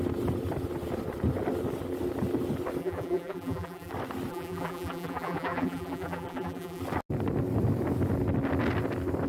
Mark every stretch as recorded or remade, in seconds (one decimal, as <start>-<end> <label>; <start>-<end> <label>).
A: 0.0-2.8 recorded; 2.8-3.9 remade; 3.9-4.3 recorded; 4.3-6.8 remade; 6.8-9.3 recorded